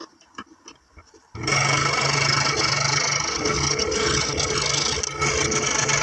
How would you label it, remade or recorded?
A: recorded